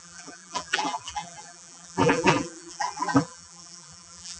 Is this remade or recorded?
remade